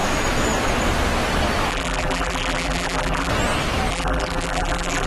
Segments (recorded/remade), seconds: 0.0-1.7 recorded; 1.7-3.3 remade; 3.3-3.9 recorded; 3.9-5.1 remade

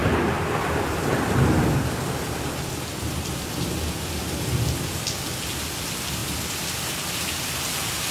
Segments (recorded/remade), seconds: 0.0-4.2 remade; 4.2-8.1 recorded

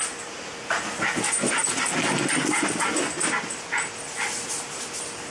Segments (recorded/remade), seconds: 0.0-5.3 recorded

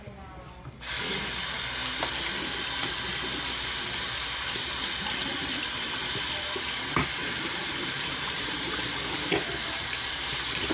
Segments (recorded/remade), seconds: 0.0-7.2 recorded; 7.2-8.3 remade; 8.3-10.7 recorded

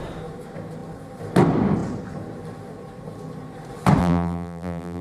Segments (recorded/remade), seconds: 0.0-4.0 recorded; 4.0-5.0 remade